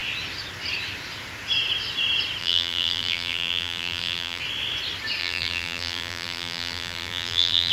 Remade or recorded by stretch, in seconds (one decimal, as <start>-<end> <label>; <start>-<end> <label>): 0.0-2.4 recorded; 2.4-4.4 remade; 4.4-5.2 recorded; 5.2-7.7 remade